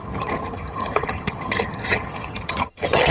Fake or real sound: fake